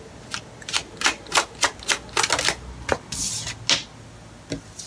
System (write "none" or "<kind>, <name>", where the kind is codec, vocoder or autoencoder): none